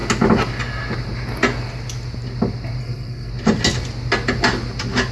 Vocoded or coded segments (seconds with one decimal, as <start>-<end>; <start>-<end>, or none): 2.8-3.3